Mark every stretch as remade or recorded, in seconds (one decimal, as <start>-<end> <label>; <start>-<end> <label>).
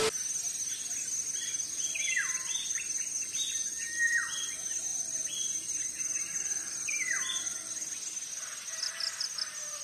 0.0-9.8 recorded